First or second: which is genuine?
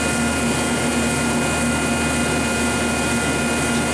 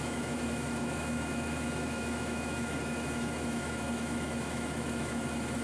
first